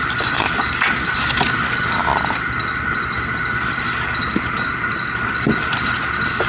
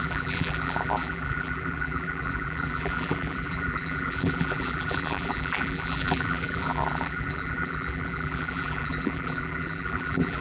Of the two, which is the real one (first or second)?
first